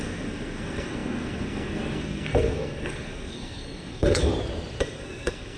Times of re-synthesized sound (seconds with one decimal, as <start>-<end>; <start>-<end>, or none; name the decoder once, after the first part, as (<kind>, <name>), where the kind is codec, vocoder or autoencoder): 0.0-4.3 (codec, SNAC); 4.8-5.6